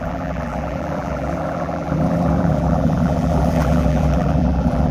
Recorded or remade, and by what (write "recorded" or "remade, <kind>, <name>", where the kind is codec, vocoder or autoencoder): remade, vocoder, BigVGAN v2